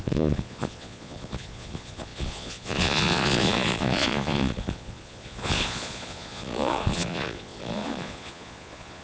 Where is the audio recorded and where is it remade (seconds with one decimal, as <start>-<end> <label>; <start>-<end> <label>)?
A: 0.0-9.0 remade